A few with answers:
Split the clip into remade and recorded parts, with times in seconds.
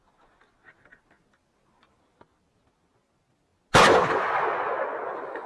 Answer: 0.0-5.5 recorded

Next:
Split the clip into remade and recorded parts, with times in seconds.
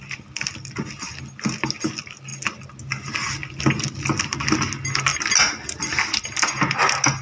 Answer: 0.0-7.2 recorded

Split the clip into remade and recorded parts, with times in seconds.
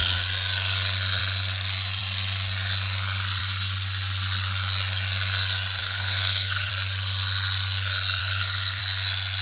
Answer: 0.0-5.8 recorded; 5.8-6.7 remade; 6.7-8.2 recorded; 8.2-8.8 remade; 8.8-9.4 recorded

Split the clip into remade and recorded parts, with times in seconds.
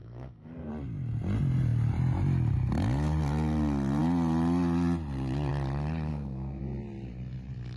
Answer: 0.0-0.7 remade; 0.7-6.1 recorded; 6.1-6.6 remade; 6.6-7.8 recorded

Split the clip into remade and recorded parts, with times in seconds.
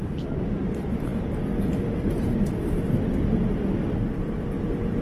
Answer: 0.0-5.0 recorded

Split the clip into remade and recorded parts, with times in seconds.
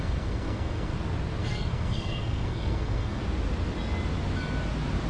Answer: 0.0-0.9 remade; 0.9-1.4 recorded; 1.4-3.2 remade; 3.2-5.1 recorded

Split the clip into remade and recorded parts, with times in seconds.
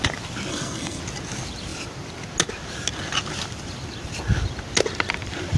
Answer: 0.0-0.5 recorded; 0.5-1.0 remade; 1.0-5.6 recorded